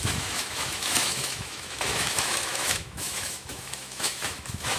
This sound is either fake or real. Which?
fake